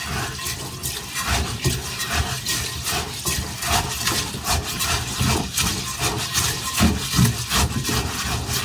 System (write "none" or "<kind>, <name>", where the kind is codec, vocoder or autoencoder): none